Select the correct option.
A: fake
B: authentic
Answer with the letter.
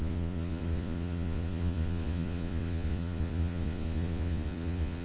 A